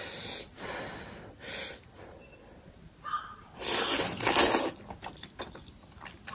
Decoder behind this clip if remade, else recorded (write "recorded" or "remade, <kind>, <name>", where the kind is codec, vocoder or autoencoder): recorded